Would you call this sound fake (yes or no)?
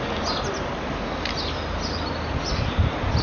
no